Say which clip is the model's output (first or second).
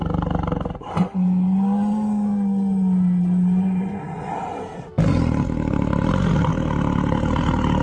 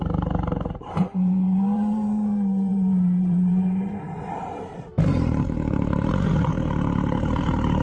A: second